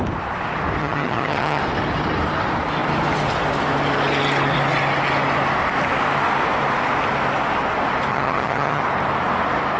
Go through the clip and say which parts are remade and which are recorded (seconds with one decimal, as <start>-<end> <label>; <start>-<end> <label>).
0.0-0.8 recorded; 0.8-1.6 remade; 1.6-8.1 recorded; 8.1-8.8 remade; 8.8-9.8 recorded